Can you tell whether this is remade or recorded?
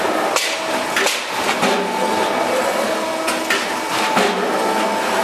recorded